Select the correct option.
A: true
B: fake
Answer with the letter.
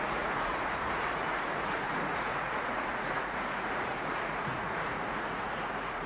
B